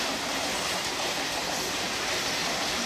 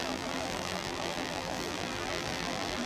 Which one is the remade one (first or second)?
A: second